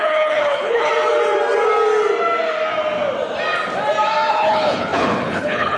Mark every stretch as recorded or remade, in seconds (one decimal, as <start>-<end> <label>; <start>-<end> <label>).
0.0-0.9 remade; 0.9-4.3 recorded; 4.3-5.8 remade